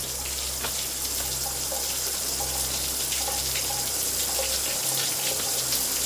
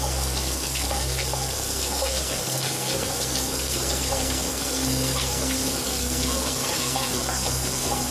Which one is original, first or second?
first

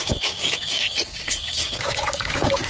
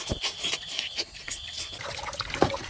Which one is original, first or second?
second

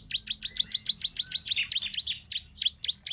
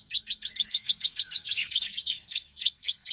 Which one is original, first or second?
first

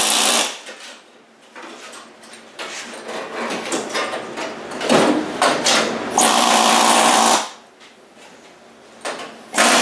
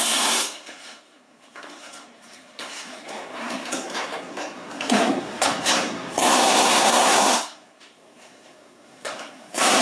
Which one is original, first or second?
first